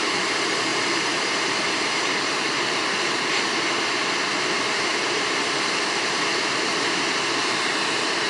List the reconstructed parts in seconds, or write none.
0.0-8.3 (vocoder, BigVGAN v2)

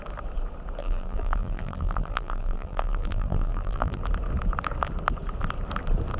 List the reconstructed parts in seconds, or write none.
0.8-4.0 (vocoder, BigVGAN v2)